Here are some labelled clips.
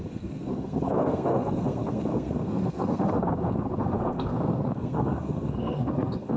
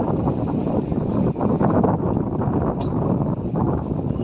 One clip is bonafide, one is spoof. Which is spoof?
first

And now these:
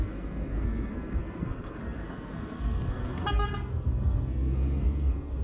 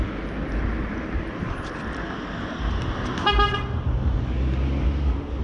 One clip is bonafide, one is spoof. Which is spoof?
first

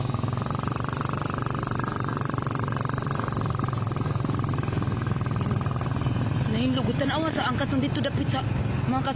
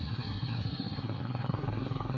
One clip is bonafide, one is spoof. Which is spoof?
second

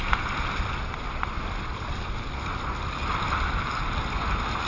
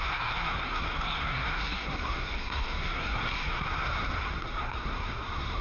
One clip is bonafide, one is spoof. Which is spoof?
second